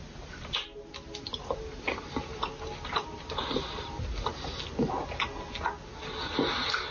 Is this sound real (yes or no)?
yes